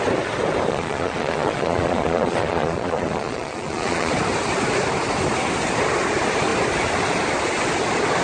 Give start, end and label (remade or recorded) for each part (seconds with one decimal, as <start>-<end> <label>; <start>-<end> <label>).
0.0-0.7 recorded; 0.7-4.1 remade; 4.1-8.2 recorded